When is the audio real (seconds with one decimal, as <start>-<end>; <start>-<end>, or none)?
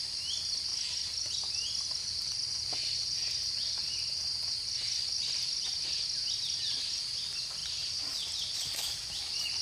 0.0-0.7; 1.3-2.0; 2.7-9.6